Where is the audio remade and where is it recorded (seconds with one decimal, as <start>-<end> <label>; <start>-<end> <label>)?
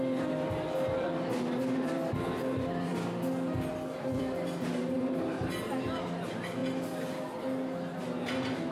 0.0-6.6 remade; 6.6-8.7 recorded